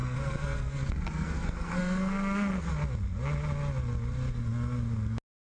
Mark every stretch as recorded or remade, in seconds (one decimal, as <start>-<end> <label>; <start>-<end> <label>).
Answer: 0.0-2.7 remade; 2.7-5.4 recorded